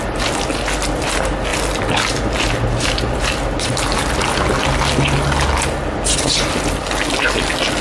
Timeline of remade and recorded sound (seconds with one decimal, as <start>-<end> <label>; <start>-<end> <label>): 0.0-7.8 recorded